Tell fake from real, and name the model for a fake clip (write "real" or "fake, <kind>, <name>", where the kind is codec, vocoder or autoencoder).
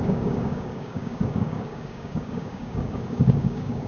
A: fake, codec, DAC